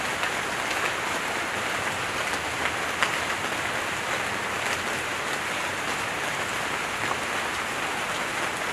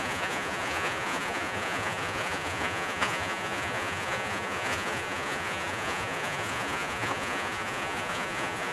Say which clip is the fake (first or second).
second